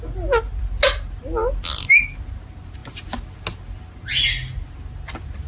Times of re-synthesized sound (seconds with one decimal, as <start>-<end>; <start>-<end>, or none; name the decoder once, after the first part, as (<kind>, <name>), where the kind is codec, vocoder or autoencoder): none